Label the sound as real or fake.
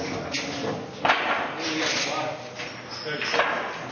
real